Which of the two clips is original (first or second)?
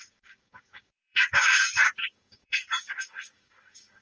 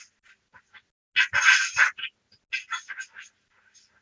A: second